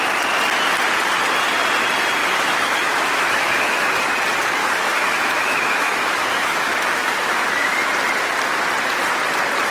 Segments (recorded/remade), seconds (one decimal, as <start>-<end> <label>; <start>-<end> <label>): 0.0-2.2 recorded; 2.2-4.0 remade; 4.0-4.6 recorded; 4.6-7.9 remade; 7.9-9.7 recorded